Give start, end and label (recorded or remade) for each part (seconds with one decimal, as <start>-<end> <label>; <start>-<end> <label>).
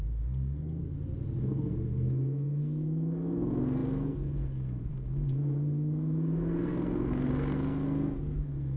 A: 0.0-0.8 remade; 0.8-1.4 recorded; 1.4-8.8 remade